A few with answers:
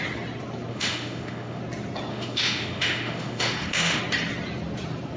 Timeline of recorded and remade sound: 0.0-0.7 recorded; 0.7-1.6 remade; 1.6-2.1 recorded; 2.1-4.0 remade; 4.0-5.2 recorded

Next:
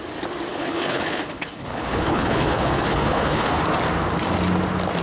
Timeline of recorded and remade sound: 0.0-0.5 recorded; 0.5-3.5 remade; 3.5-5.0 recorded

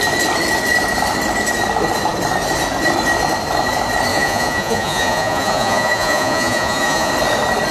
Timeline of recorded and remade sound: 0.0-4.1 recorded; 4.1-7.1 remade; 7.1-7.7 recorded

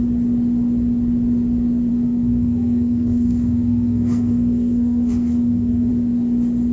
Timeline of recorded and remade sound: 0.0-1.9 recorded; 1.9-5.9 remade; 5.9-6.7 recorded

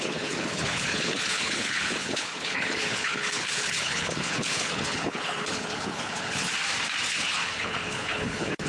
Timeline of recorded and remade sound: 0.0-6.5 remade; 6.5-7.2 recorded; 7.2-8.7 remade

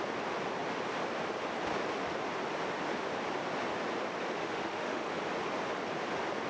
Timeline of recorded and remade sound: 0.0-4.4 recorded; 4.4-5.1 remade; 5.1-6.5 recorded

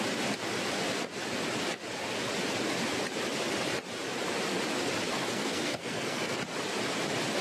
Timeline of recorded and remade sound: 0.0-5.1 recorded; 5.1-6.4 remade; 6.4-7.4 recorded